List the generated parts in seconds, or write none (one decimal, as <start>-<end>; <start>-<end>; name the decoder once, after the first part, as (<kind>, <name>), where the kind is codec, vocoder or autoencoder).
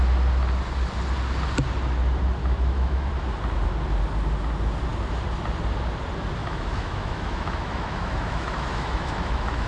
2.4-3.1 (autoencoder, DAC-VAE); 6.4-9.7